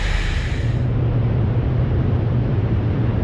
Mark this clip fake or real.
fake